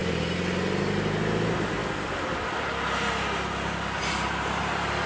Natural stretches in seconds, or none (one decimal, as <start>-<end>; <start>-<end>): 0.0-5.1